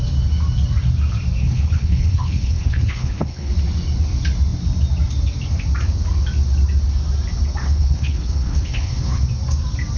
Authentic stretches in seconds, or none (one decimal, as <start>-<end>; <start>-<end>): 0.0-1.4; 3.5-7.6; 9.2-10.0